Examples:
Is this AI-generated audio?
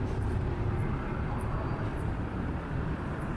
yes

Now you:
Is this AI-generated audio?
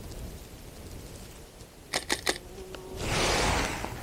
no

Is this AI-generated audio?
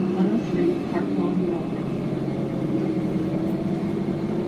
yes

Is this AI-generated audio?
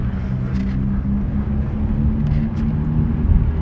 no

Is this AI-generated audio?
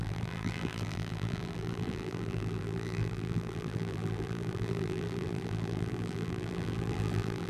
yes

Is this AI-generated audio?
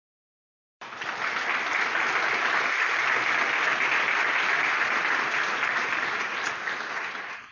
yes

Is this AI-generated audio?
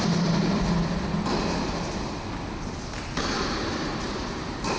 no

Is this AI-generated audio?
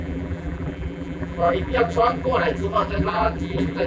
yes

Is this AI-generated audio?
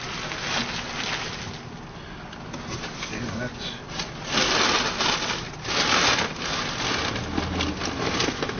no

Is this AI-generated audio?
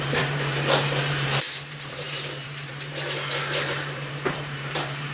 yes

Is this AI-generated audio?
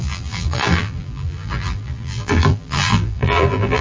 yes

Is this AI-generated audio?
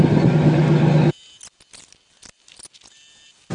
no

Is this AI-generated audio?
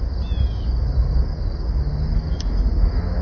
no